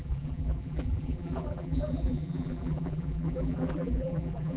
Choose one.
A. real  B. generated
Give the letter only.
B